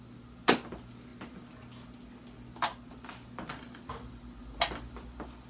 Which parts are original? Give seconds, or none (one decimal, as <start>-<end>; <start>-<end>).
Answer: 0.0-5.5